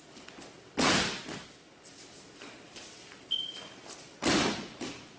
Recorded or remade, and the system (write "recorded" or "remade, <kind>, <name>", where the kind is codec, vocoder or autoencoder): recorded